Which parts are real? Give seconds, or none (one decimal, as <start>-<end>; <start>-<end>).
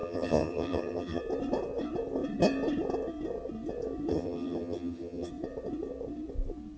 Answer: 1.2-4.1; 5.3-6.8